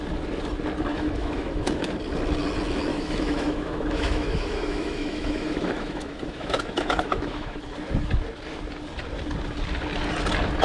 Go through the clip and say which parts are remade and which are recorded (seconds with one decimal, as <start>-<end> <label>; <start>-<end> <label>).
0.0-0.9 recorded; 0.9-2.0 remade; 2.0-2.9 recorded; 2.9-7.6 remade; 7.6-10.6 recorded